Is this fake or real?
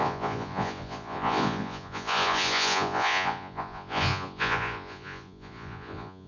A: fake